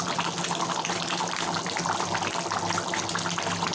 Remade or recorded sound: recorded